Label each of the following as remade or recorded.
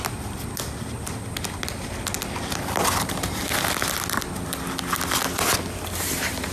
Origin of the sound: recorded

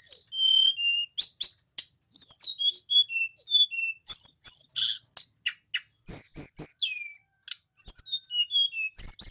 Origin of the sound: recorded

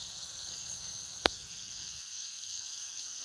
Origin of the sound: remade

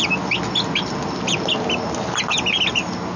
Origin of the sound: recorded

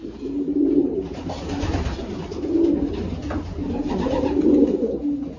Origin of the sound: recorded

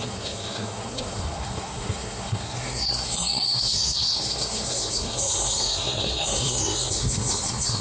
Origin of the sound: remade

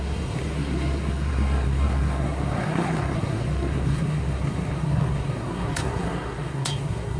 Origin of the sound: remade